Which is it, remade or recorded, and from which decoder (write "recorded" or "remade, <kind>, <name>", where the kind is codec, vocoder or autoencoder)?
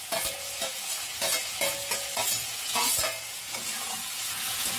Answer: remade, vocoder, Vocos